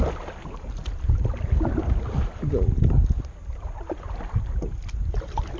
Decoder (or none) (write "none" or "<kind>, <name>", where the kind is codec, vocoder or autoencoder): none